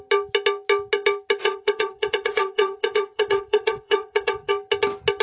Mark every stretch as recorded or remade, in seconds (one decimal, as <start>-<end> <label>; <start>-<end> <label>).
0.0-1.4 recorded; 1.4-4.5 remade; 4.5-5.2 recorded

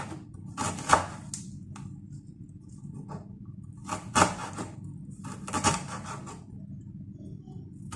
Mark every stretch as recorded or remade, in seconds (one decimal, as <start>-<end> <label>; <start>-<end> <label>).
0.0-8.0 recorded

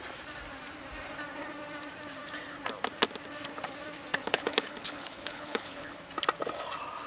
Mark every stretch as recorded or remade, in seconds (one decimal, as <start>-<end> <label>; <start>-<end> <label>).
0.0-4.2 recorded; 4.2-6.0 remade; 6.0-7.1 recorded

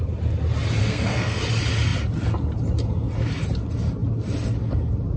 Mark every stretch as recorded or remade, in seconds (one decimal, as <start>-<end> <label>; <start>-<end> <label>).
0.0-0.8 recorded; 0.8-1.4 remade; 1.4-5.2 recorded

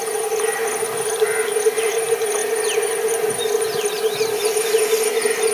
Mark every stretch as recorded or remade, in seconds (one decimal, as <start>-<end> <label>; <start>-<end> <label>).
0.0-5.5 recorded

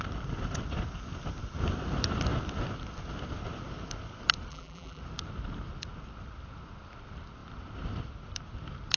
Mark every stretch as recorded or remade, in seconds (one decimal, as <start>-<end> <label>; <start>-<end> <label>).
0.0-4.5 recorded; 4.5-5.0 remade; 5.0-9.0 recorded